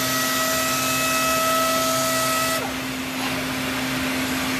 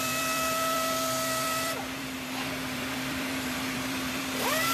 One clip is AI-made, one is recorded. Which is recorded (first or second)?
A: first